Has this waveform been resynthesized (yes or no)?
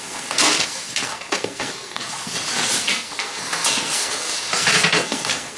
yes